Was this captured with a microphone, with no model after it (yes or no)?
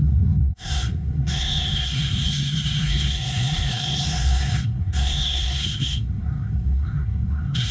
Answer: no